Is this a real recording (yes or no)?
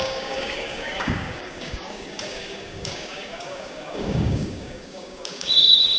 no